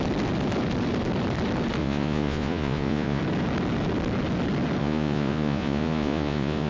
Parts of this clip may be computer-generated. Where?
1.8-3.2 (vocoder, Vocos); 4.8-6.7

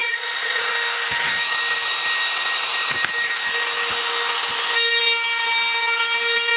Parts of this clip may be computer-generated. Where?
0.0-0.7 (vocoder, Vocos)

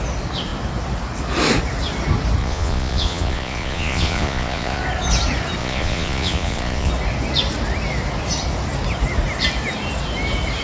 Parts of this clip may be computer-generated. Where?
2.4-4.8 (vocoder, Vocos); 5.6-6.9

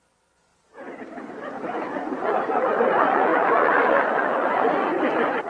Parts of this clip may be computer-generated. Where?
0.0-0.5 (vocoder, Vocos); 1.3-5.5